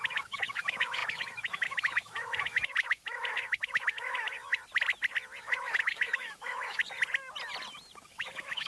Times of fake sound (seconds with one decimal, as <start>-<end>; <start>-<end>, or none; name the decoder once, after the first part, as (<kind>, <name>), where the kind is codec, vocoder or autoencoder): 0.0-4.6 (autoencoder, DAC-VAE); 5.4-6.8; 8.1-8.7